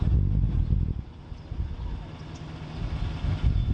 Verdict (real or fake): real